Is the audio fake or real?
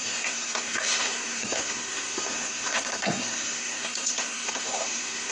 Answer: fake